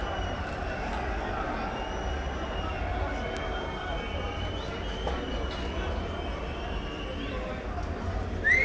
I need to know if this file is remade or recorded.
recorded